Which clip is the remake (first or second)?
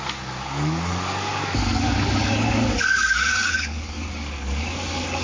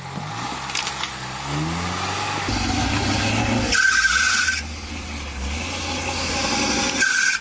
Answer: first